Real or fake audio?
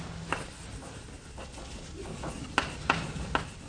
real